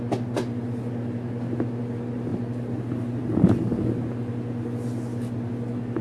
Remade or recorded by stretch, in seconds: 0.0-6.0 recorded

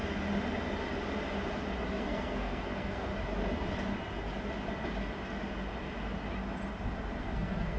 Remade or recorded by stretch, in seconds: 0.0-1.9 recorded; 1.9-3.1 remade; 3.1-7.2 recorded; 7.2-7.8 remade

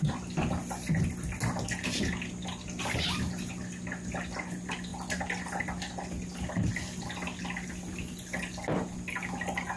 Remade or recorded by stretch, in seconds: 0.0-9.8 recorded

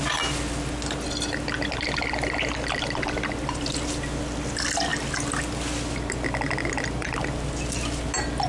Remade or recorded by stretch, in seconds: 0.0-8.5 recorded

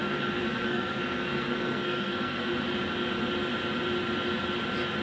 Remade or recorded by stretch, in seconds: 0.0-2.5 remade; 2.5-5.0 recorded

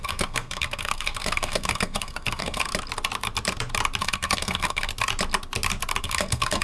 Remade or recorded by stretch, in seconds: 0.0-2.7 remade; 2.7-4.0 recorded; 4.0-4.9 remade; 4.9-6.0 recorded; 6.0-6.6 remade

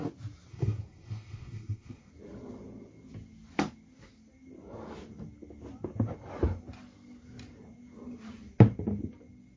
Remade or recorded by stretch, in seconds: 0.0-0.5 recorded; 0.5-2.1 remade; 2.1-9.6 recorded